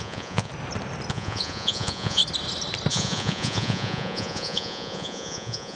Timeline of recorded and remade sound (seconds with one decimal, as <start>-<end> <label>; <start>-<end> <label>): 0.0-0.5 remade; 0.5-1.1 recorded; 1.1-2.2 remade; 2.2-2.9 recorded; 2.9-5.8 remade